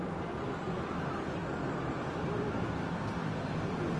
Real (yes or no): no